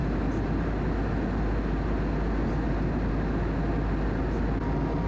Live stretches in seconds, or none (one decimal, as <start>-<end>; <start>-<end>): 0.0-5.1